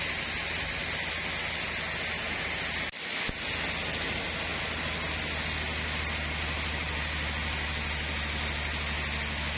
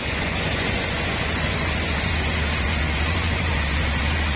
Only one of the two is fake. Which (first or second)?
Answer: second